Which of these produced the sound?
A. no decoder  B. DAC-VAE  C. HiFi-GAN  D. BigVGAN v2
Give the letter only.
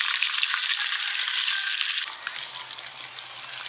A